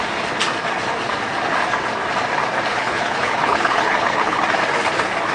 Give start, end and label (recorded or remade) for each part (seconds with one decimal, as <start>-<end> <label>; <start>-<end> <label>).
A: 0.0-2.7 recorded; 2.7-4.4 remade; 4.4-5.3 recorded